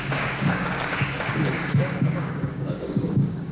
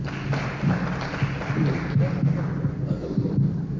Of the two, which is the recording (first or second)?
second